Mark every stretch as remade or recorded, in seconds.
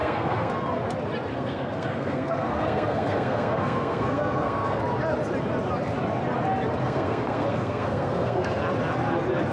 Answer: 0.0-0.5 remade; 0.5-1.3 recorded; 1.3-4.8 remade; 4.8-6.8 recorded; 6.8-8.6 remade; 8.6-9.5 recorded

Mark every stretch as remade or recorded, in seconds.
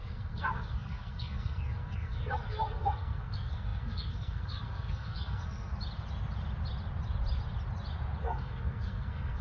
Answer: 0.0-5.7 remade; 5.7-8.2 recorded; 8.2-9.4 remade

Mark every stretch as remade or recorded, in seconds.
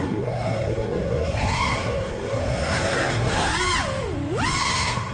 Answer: 0.0-3.5 remade; 3.5-4.6 recorded; 4.6-5.1 remade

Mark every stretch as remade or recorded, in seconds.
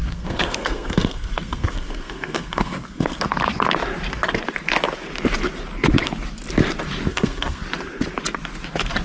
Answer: 0.0-3.2 remade; 3.2-7.1 recorded; 7.1-7.6 remade; 7.6-9.0 recorded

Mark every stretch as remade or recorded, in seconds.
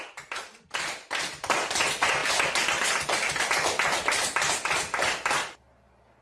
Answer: 0.0-6.2 recorded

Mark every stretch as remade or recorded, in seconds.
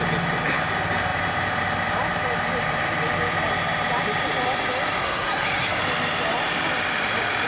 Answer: 0.0-5.0 recorded; 5.0-5.8 remade; 5.8-7.5 recorded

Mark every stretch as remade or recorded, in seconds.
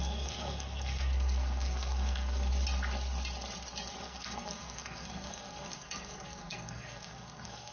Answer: 0.0-2.5 remade; 2.5-4.0 recorded; 4.0-7.7 remade